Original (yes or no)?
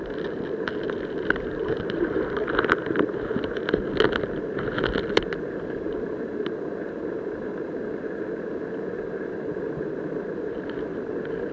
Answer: yes